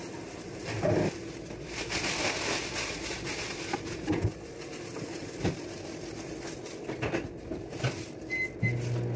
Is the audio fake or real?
real